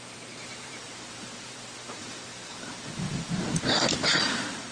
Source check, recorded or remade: remade